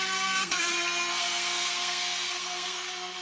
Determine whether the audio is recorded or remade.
remade